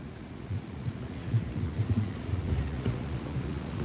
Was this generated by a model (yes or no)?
yes